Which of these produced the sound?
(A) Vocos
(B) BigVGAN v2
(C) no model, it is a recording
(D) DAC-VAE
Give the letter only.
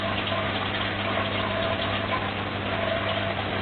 C